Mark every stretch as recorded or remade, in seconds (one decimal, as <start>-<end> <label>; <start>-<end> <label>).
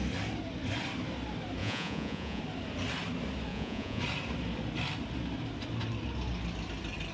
0.0-1.6 recorded; 1.6-2.4 remade; 2.4-3.5 recorded; 3.5-4.0 remade; 4.0-7.1 recorded